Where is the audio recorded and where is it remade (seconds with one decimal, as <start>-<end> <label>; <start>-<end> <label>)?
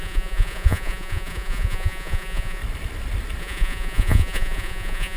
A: 0.0-2.6 remade; 2.6-3.4 recorded; 3.4-5.2 remade